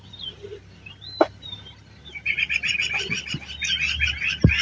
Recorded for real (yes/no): yes